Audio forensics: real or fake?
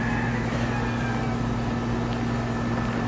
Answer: real